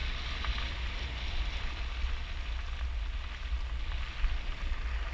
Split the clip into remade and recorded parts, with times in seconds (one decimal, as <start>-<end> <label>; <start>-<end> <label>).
0.0-5.1 recorded